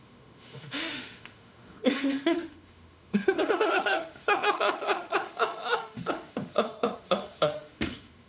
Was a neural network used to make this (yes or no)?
yes